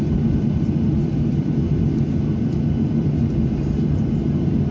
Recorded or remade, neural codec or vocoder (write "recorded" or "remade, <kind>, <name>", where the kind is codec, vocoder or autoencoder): recorded